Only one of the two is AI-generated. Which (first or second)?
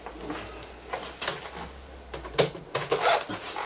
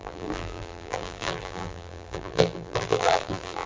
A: second